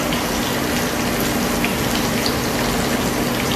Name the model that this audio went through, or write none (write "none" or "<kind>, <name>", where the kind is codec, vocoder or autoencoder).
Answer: none